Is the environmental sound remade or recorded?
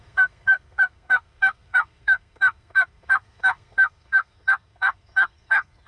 remade